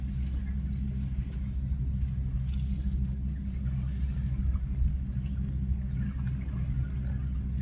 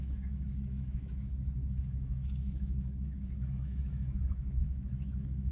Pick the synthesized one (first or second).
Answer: second